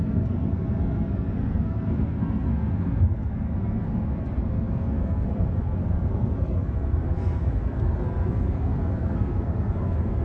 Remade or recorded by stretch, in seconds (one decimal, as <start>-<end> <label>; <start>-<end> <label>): 0.0-10.2 remade